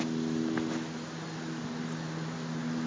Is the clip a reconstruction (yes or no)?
no